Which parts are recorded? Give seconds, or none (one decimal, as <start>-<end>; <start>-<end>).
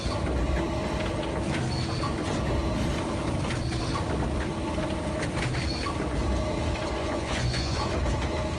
0.0-7.0; 7.9-8.6